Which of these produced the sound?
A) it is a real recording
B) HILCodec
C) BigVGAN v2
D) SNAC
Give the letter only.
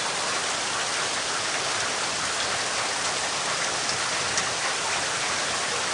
A